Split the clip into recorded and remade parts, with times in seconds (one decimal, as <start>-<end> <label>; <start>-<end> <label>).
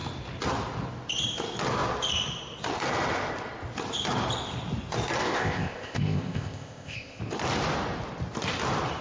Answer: 0.0-5.2 recorded; 5.2-7.2 remade; 7.2-9.0 recorded